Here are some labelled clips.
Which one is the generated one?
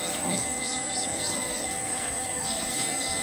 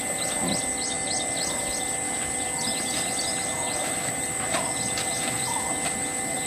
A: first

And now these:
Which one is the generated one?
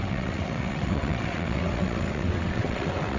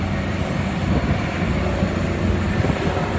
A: first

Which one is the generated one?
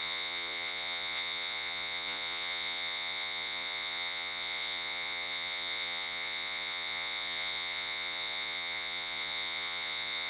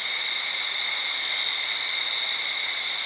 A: first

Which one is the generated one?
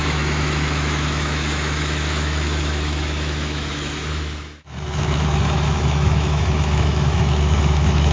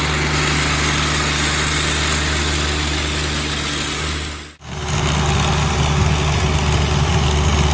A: first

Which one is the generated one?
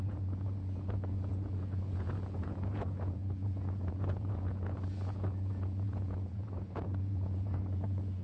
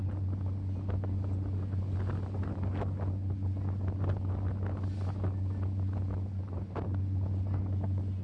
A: first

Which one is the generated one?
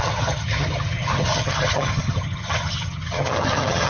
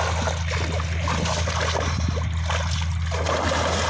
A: first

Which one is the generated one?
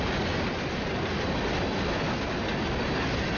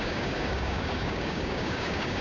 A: second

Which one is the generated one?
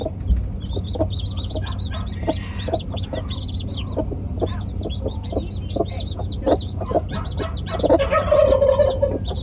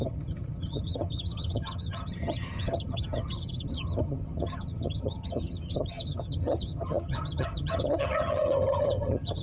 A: second